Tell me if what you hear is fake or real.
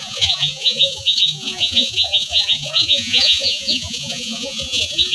fake